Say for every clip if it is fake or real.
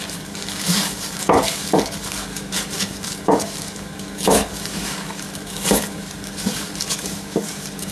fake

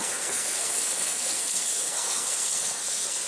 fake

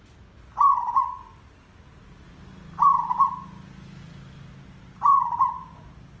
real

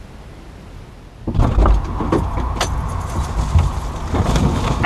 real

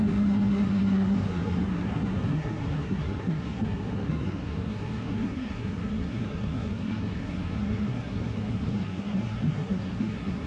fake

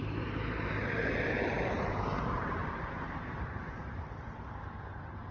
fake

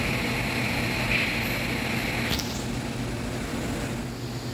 real